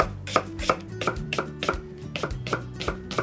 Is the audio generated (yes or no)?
yes